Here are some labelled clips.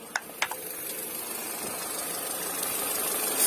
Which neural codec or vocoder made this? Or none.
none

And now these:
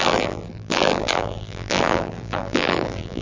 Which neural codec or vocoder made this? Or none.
vocoder, BigVGAN v2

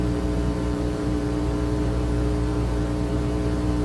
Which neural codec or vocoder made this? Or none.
vocoder, BigVGAN v2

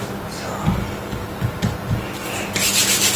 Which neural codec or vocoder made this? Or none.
vocoder, BigVGAN v2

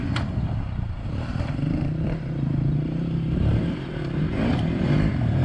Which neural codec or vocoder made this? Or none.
vocoder, BigVGAN v2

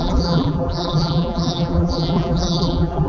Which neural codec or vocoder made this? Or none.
vocoder, BigVGAN v2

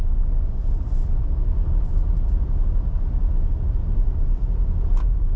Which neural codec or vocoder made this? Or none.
none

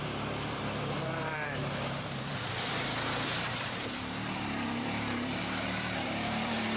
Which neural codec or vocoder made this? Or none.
vocoder, BigVGAN v2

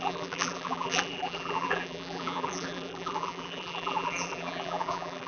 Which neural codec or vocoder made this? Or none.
vocoder, BigVGAN v2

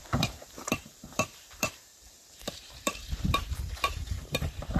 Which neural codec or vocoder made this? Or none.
vocoder, BigVGAN v2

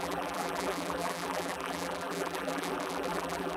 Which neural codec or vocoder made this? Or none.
vocoder, BigVGAN v2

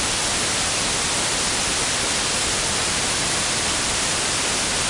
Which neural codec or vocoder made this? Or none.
none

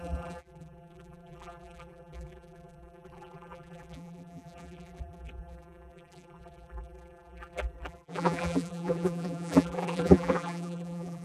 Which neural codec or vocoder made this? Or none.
vocoder, BigVGAN v2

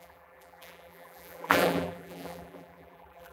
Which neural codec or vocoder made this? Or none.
vocoder, BigVGAN v2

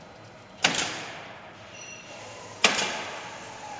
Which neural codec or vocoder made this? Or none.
vocoder, BigVGAN v2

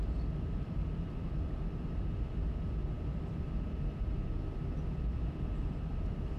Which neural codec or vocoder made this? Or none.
vocoder, BigVGAN v2